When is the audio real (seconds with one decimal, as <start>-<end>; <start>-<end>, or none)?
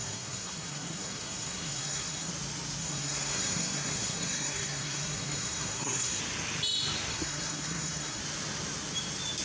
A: 2.3-2.8; 6.2-7.1; 8.2-9.4